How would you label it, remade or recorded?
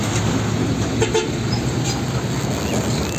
recorded